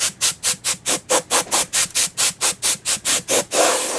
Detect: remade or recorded remade